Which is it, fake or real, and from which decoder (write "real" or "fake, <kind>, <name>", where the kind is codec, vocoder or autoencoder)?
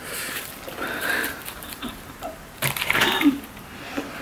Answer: fake, vocoder, BigVGAN v2